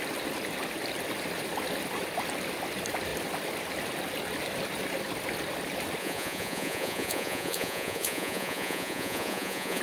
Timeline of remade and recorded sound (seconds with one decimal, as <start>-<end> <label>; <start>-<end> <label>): 0.0-6.0 recorded; 6.0-9.8 remade